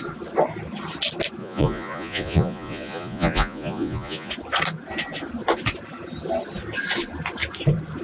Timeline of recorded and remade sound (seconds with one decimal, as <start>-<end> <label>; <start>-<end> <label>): 0.0-1.4 recorded; 1.4-4.3 remade; 4.3-8.0 recorded